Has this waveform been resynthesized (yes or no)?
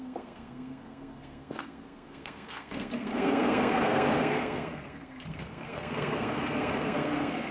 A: yes